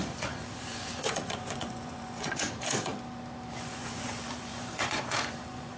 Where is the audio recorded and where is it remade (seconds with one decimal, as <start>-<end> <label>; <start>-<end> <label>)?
0.0-2.9 remade; 2.9-3.5 recorded; 3.5-5.8 remade